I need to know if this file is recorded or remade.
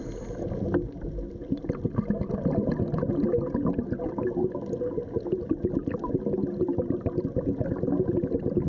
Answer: recorded